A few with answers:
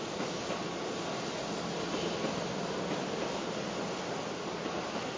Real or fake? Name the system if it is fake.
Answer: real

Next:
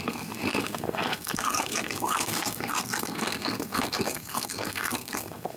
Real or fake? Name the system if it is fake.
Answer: fake, codec, SNAC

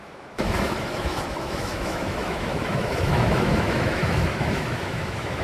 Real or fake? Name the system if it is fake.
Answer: fake, autoencoder, DAC-VAE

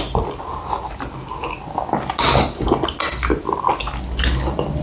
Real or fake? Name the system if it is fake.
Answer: real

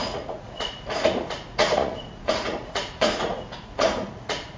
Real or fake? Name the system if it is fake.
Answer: fake, vocoder, Vocos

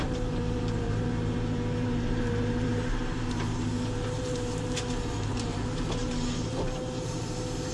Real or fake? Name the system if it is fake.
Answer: fake, vocoder, BigVGAN v2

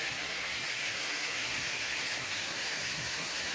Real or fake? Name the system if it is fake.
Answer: fake, codec, SNAC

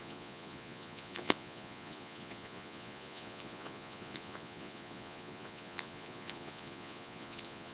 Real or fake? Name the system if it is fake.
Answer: fake, vocoder, Vocos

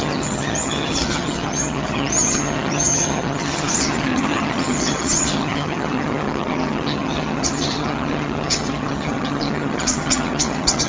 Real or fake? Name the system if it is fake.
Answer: fake, vocoder, HiFi-GAN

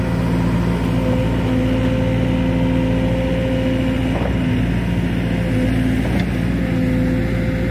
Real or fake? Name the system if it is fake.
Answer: real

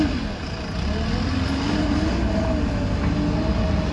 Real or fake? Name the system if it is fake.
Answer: real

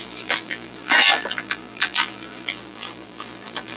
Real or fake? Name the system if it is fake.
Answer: fake, vocoder, BigVGAN v2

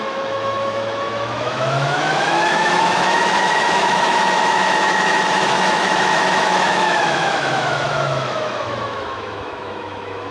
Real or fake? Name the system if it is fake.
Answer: fake, autoencoder, DAC-VAE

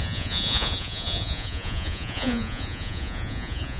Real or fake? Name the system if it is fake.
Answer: fake, vocoder, Vocos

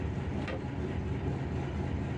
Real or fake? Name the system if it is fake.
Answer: real